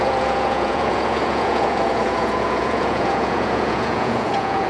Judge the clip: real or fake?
fake